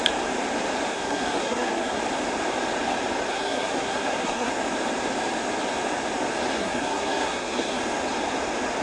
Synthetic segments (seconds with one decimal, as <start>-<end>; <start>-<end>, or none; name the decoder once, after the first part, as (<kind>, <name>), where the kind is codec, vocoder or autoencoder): 0.9-2.0 (codec, SNAC); 3.3-4.5; 6.5-7.8